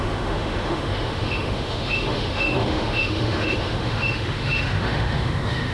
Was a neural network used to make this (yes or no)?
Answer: yes